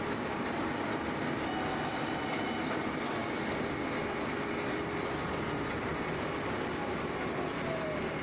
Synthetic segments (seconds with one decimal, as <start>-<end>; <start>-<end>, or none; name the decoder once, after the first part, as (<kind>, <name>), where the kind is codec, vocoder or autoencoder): none